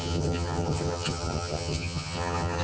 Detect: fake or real fake